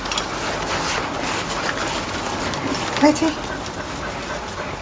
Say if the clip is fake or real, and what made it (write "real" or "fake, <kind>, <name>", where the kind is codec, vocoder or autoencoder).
real